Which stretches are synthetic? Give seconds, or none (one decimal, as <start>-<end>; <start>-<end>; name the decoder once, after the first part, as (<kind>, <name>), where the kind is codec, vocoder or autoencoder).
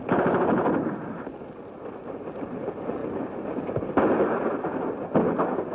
none